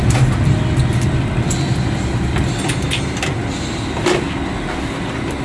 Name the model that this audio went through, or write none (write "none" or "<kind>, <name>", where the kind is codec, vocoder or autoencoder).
none